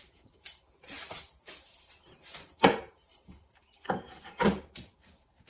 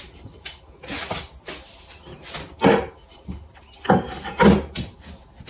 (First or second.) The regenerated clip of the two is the first